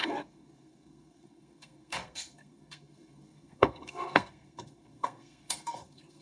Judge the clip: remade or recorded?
remade